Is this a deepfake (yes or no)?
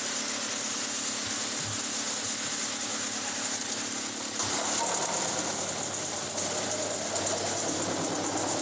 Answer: no